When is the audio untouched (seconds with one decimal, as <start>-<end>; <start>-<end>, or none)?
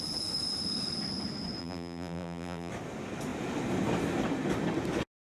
0.0-1.6; 2.7-5.3